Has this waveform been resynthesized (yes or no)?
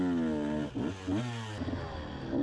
no